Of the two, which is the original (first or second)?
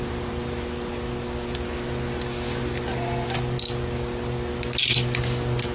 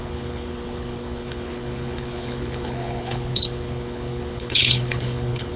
first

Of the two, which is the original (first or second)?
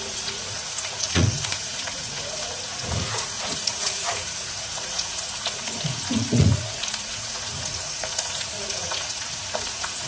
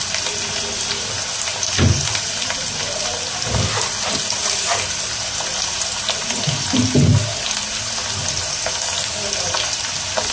second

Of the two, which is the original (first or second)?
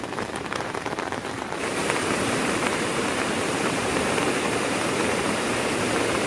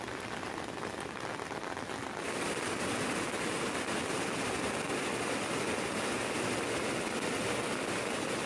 second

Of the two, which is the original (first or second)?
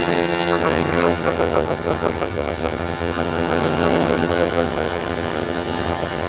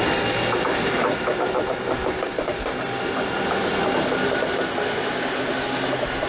second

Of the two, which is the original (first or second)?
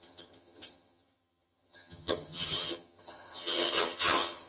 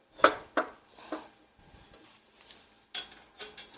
second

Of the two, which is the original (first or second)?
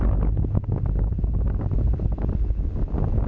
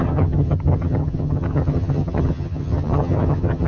first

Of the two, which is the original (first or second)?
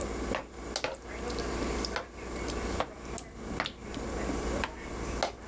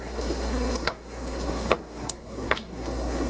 first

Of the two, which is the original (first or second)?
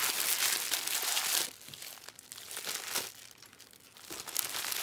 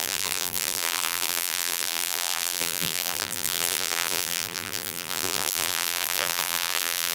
first